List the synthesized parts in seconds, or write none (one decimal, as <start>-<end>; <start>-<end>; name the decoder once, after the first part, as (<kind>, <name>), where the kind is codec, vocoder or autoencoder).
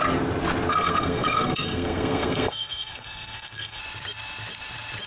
0.7-3.8 (codec, SNAC)